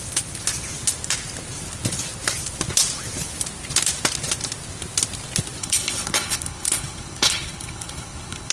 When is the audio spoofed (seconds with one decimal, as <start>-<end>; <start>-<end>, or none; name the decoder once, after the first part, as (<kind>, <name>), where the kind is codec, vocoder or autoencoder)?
5.6-8.5 (codec, HILCodec)